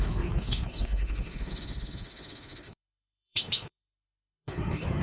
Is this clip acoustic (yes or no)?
no